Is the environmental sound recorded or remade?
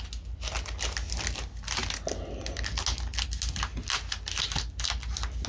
recorded